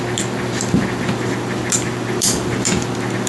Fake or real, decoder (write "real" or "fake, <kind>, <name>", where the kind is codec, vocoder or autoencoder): fake, vocoder, BigVGAN v2